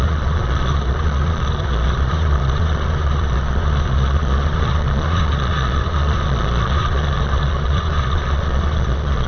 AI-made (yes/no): yes